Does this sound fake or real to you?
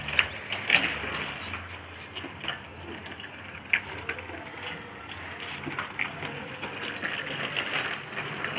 real